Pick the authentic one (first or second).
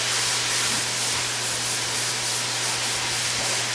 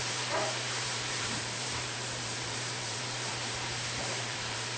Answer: first